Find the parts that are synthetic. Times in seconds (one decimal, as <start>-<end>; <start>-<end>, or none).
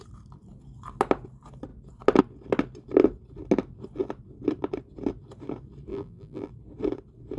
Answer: 5.9-6.5